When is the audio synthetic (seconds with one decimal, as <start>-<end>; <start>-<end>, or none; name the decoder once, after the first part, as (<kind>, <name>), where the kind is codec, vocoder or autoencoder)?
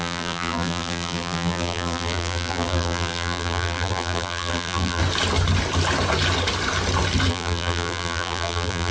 0.0-5.0 (vocoder, BigVGAN v2); 7.3-8.9